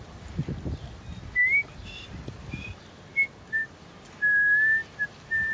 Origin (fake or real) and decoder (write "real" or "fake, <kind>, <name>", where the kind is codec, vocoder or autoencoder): real